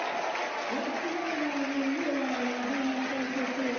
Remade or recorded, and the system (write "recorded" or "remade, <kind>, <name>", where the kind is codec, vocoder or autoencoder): recorded